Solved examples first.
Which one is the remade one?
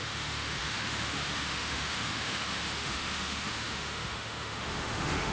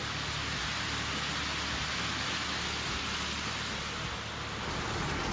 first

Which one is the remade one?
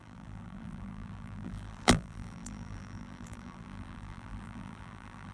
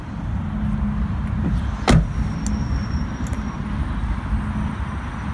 first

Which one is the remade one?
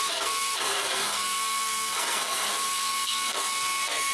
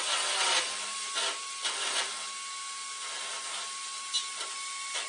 first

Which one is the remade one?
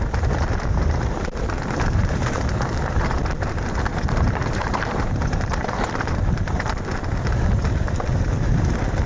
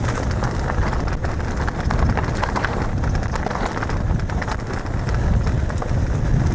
first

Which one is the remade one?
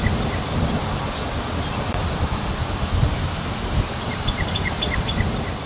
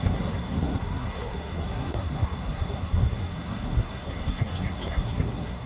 second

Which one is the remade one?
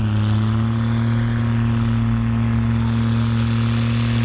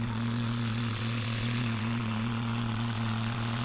second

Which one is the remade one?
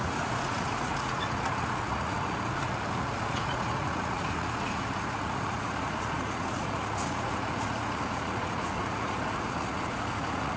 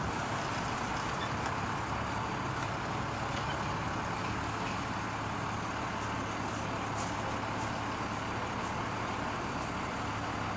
first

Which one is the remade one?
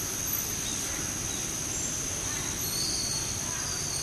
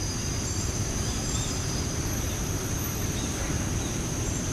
second